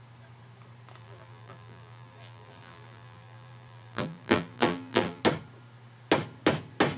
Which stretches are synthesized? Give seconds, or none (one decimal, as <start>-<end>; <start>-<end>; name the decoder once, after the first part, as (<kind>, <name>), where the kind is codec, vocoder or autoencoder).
1.0-5.2 (vocoder, BigVGAN v2)